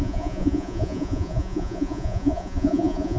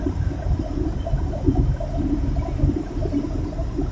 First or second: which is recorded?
second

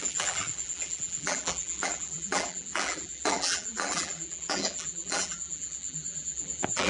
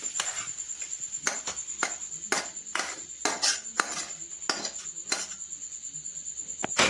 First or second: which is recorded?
second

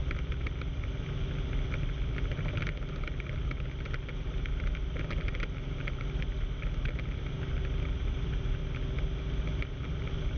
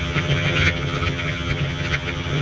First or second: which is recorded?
first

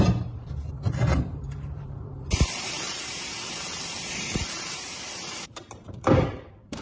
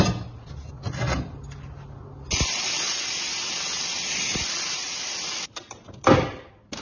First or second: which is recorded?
second